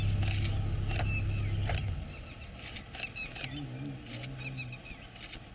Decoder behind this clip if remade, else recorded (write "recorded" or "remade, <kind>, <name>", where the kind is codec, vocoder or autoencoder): recorded